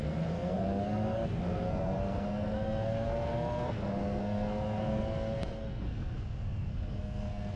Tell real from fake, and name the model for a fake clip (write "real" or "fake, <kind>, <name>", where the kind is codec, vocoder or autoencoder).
fake, codec, SNAC